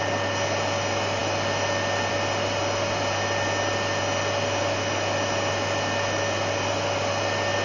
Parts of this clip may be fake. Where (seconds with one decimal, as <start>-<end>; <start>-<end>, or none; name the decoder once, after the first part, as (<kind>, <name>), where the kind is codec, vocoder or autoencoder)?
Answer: none